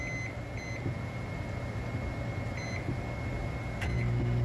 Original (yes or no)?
yes